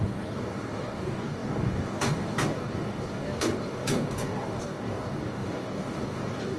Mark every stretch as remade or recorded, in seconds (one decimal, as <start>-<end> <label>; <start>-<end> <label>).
0.0-6.6 remade